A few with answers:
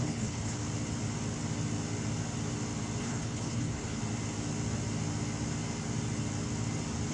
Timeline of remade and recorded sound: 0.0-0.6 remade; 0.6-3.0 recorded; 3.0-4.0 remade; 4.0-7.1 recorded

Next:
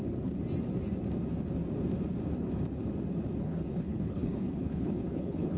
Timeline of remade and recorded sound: 0.0-3.4 recorded; 3.4-5.6 remade